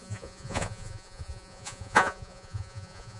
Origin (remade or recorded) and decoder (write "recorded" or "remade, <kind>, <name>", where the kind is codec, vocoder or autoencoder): remade, vocoder, Vocos